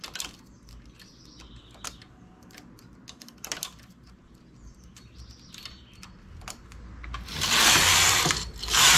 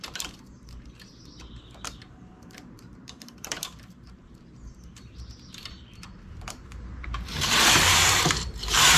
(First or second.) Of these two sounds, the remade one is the second